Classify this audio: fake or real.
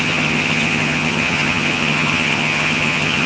fake